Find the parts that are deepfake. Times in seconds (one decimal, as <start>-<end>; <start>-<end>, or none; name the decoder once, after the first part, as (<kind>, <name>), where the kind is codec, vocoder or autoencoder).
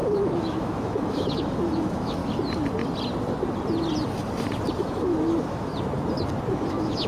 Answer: 0.0-2.2 (autoencoder, DAC-VAE); 4.8-5.7; 6.5-7.1